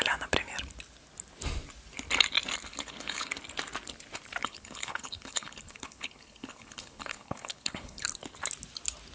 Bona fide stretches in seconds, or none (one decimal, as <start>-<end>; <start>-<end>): 0.0-2.7; 3.3-4.4; 8.0-9.1